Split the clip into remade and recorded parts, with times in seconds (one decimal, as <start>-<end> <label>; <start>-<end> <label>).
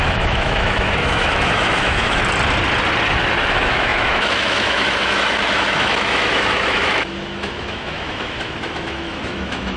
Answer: 0.0-2.2 remade; 2.2-3.5 recorded; 3.5-9.8 remade